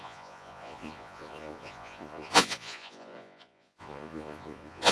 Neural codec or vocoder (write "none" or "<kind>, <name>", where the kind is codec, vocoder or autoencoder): vocoder, Vocos